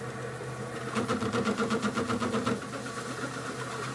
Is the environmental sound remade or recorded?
recorded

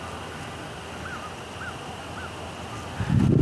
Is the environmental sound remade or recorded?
recorded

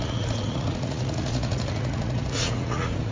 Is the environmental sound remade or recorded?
remade